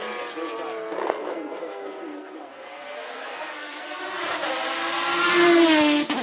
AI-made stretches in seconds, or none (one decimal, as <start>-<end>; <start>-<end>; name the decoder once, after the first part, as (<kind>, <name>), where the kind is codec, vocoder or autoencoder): 1.0-4.0 (codec, SNAC)